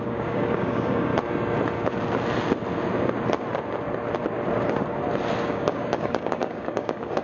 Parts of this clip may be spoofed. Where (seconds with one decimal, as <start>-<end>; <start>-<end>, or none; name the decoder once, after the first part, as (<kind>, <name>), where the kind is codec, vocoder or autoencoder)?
0.0-1.1 (codec, DAC); 5.4-7.2